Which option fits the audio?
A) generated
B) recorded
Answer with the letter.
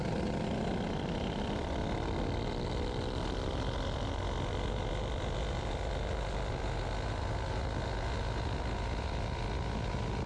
B